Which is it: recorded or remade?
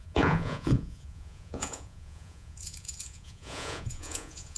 remade